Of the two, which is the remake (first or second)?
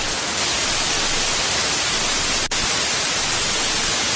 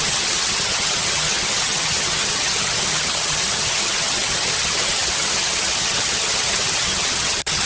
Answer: second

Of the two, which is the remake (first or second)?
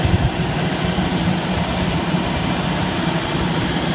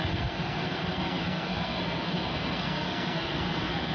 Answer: second